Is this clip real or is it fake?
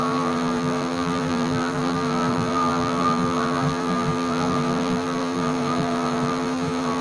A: fake